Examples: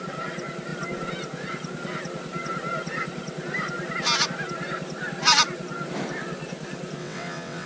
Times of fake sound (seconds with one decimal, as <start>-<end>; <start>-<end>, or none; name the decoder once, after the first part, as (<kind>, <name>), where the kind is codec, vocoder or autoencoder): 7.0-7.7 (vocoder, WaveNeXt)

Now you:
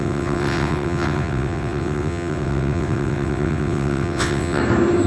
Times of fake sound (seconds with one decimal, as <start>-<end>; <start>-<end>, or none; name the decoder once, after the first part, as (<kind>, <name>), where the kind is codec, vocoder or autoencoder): 0.0-4.6 (vocoder, WaveNeXt)

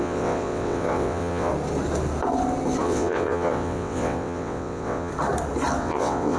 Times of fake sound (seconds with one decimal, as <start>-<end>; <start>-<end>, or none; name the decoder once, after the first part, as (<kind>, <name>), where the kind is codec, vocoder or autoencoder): 0.0-1.5 (vocoder, WaveNeXt); 2.8-5.1; 5.8-6.4

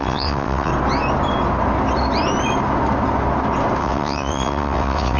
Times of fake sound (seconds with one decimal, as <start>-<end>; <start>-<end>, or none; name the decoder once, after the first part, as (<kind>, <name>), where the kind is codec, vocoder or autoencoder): 0.0-0.7 (vocoder, WaveNeXt); 3.8-5.2